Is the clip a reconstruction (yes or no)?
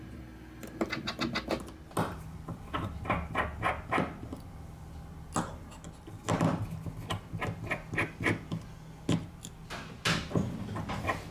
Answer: no